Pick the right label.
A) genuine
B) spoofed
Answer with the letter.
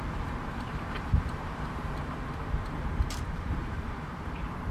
B